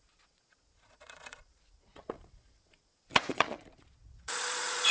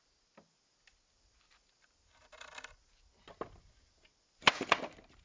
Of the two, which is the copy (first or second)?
first